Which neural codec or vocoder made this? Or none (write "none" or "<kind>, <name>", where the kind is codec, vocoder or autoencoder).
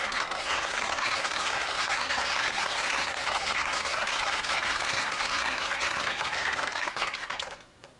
codec, SNAC